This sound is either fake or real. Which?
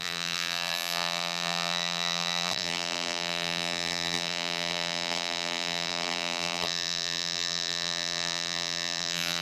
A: fake